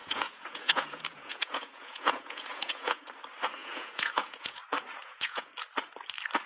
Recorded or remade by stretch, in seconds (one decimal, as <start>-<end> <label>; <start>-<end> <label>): 0.0-3.1 remade; 3.1-3.6 recorded; 3.6-4.6 remade; 4.6-5.0 recorded; 5.0-5.5 remade; 5.5-6.5 recorded